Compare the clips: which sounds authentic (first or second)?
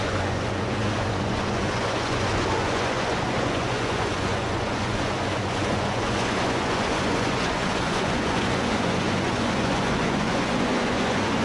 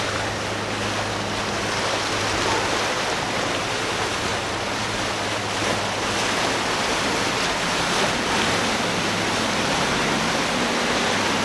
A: second